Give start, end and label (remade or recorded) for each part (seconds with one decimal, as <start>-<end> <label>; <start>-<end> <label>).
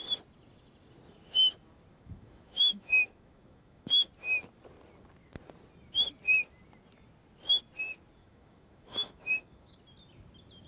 0.0-1.9 recorded; 1.9-4.1 remade; 4.1-8.2 recorded; 8.2-9.8 remade; 9.8-10.7 recorded